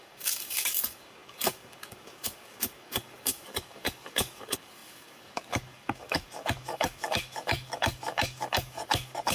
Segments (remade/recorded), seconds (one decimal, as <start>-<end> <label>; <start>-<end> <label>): 0.0-9.3 remade